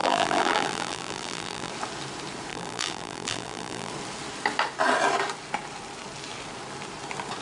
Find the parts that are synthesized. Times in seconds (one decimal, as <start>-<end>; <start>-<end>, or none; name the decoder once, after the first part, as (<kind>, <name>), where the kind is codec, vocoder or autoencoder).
0.0-1.7 (vocoder, BigVGAN v2); 2.5-3.9